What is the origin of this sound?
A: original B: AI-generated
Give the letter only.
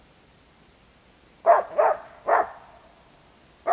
A